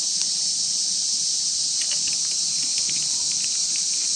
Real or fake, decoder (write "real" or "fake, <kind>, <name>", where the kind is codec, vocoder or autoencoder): real